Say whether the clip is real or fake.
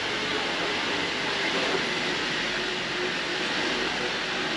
real